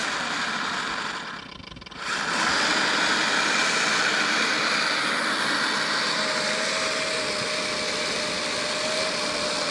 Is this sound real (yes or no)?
yes